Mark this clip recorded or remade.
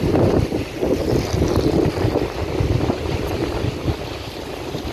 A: recorded